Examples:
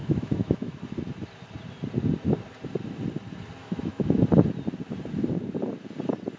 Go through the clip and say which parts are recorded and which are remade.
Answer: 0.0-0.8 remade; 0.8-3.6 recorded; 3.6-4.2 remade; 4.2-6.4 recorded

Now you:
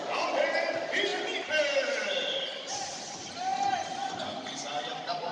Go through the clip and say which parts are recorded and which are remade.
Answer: 0.0-5.3 recorded

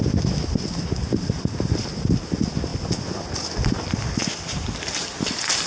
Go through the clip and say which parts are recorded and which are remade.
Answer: 0.0-5.7 recorded

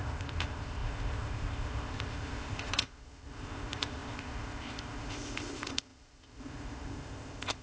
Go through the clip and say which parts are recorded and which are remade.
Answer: 0.0-7.6 remade

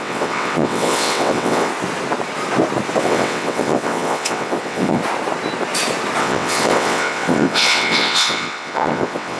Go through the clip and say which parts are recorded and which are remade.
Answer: 0.0-1.7 remade; 1.7-3.0 recorded; 3.0-5.0 remade; 5.0-6.2 recorded; 6.2-9.4 remade

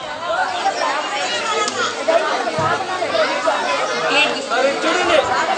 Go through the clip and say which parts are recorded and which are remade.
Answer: 0.0-5.6 recorded

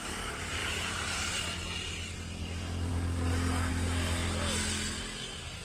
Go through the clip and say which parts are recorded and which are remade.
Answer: 0.0-5.6 recorded

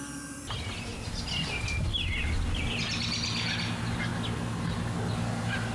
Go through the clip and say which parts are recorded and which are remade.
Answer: 0.0-5.7 recorded